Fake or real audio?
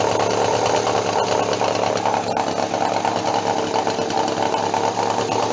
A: real